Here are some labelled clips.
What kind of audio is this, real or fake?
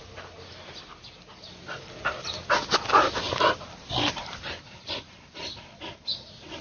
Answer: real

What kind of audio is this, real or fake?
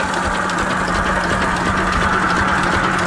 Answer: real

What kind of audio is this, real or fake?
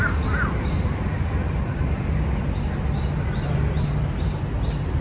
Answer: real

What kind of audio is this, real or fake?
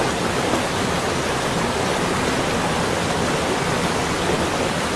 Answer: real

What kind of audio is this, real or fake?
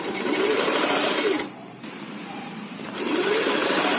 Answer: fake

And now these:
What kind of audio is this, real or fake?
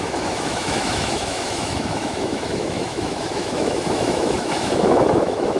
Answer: fake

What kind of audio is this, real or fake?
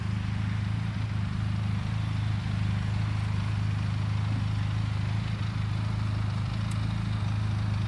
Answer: real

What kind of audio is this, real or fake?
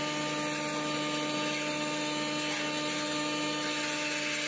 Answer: real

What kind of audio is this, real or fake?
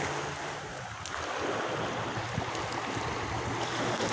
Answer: real